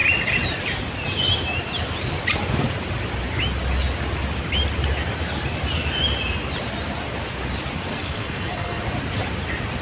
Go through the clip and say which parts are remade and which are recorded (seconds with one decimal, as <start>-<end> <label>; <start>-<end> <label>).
0.0-7.9 recorded; 7.9-8.8 remade; 8.8-9.8 recorded